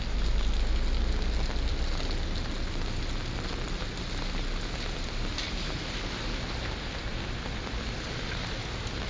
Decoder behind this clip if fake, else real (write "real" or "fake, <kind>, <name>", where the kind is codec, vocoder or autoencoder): real